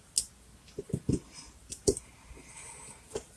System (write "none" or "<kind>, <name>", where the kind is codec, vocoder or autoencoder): none